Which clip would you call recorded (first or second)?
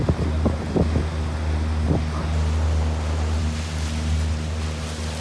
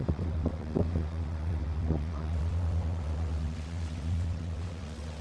first